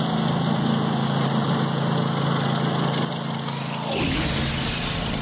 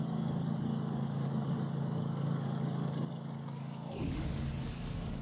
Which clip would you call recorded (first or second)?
first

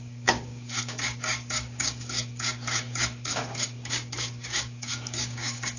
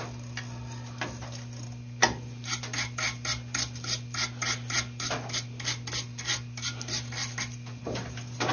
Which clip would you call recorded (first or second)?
second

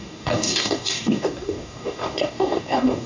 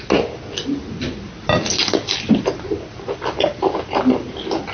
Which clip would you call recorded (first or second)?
second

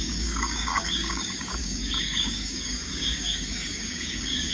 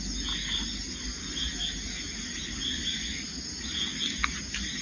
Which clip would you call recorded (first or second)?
second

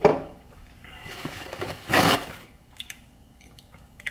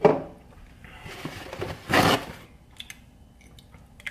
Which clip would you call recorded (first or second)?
second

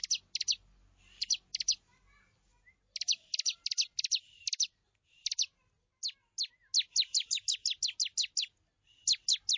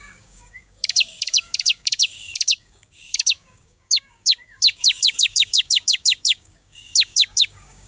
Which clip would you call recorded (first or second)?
first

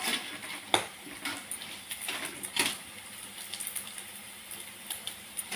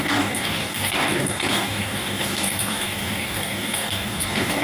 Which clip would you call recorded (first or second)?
first